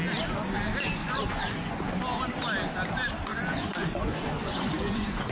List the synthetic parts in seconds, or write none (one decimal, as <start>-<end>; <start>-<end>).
1.0-1.8; 3.3-5.3